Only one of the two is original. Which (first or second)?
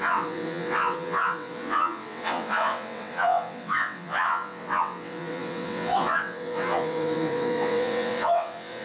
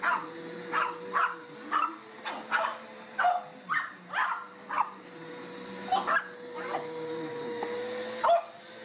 second